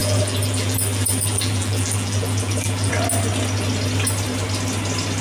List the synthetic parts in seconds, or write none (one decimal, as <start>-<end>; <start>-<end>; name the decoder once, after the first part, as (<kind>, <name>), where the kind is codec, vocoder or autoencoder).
0.0-2.9 (vocoder, BigVGAN v2)